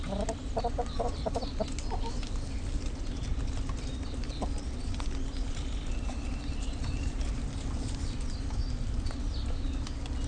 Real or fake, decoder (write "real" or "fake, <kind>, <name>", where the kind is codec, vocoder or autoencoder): real